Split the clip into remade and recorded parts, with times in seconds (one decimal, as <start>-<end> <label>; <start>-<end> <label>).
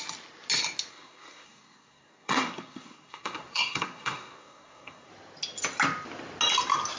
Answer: 0.0-0.9 recorded; 0.9-5.1 remade; 5.1-7.0 recorded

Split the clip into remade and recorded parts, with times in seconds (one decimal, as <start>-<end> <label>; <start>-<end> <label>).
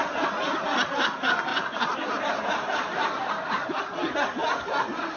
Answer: 0.0-1.5 recorded; 1.5-3.3 remade; 3.3-5.2 recorded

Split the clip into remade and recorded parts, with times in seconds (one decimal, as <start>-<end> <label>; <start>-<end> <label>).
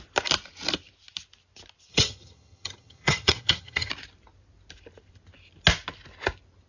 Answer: 0.0-1.9 recorded; 1.9-3.9 remade; 3.9-6.7 recorded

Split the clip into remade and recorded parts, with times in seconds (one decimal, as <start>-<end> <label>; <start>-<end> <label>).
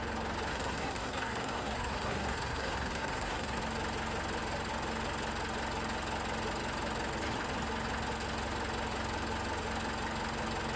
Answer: 0.0-0.5 recorded; 0.5-3.6 remade; 3.6-10.8 recorded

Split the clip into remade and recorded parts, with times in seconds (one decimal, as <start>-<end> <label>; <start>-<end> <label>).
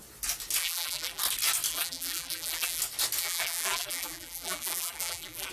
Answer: 0.0-0.6 recorded; 0.6-1.2 remade; 1.2-1.7 recorded; 1.7-2.8 remade; 2.8-3.2 recorded; 3.2-5.5 remade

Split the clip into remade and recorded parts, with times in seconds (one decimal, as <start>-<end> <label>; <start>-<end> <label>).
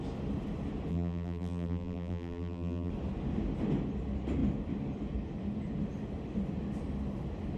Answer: 0.0-0.9 recorded; 0.9-2.9 remade; 2.9-7.6 recorded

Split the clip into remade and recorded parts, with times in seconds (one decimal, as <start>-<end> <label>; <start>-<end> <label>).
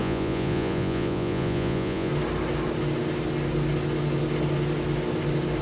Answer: 0.0-2.1 remade; 2.1-5.6 recorded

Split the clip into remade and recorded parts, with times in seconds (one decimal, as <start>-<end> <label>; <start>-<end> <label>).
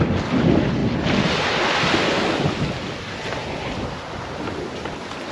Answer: 0.0-5.3 recorded